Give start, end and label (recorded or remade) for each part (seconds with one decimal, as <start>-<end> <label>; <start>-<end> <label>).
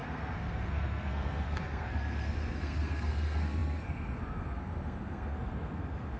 0.0-6.2 remade